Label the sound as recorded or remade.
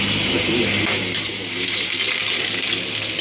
recorded